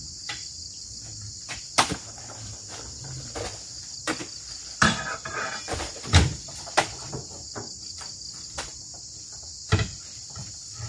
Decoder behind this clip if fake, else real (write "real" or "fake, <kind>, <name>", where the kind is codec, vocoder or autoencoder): fake, vocoder, BigVGAN v2